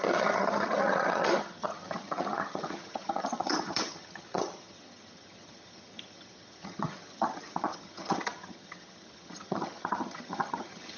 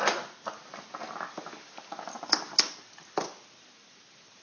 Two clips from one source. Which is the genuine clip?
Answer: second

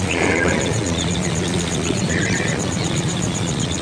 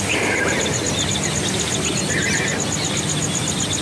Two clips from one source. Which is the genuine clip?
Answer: second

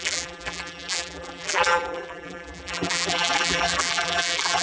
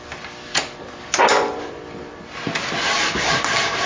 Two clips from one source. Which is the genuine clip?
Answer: second